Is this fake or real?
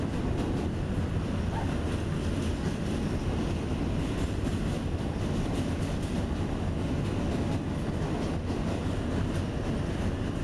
real